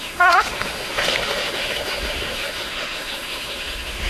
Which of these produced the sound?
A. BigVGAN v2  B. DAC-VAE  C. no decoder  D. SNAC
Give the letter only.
B